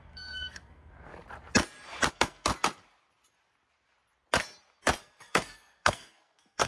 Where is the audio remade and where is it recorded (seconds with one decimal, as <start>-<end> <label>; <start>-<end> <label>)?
0.0-1.1 remade; 1.1-2.1 recorded; 2.1-2.5 remade; 2.5-5.0 recorded; 5.0-6.7 remade